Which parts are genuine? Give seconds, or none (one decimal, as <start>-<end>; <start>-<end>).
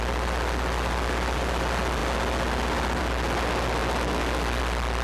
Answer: 0.0-5.0